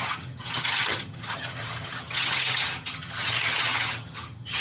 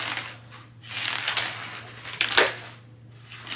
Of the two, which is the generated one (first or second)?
first